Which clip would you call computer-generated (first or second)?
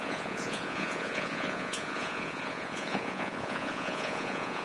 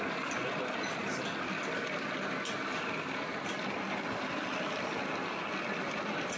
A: first